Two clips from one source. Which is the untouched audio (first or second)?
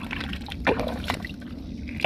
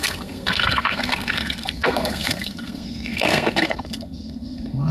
first